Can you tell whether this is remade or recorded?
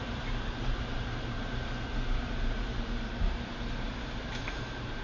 remade